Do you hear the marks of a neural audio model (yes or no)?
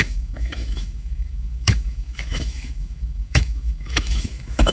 yes